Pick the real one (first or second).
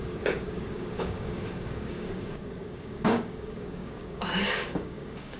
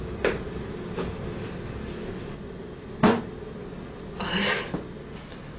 second